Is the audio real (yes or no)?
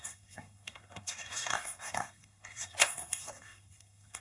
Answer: no